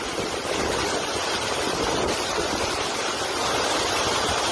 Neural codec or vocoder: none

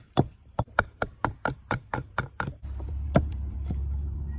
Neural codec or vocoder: vocoder, BigVGAN v2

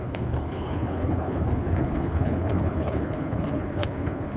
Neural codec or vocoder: codec, HILCodec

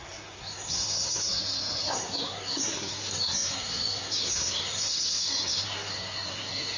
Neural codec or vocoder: codec, SNAC